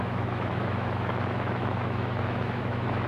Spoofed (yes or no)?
yes